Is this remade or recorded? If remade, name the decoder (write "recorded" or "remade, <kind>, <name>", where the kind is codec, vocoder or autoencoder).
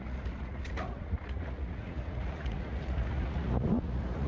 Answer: remade, vocoder, Vocos